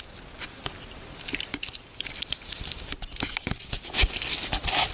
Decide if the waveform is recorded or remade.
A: recorded